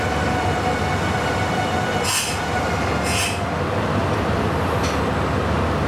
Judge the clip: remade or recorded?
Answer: recorded